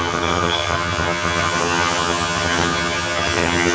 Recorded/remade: remade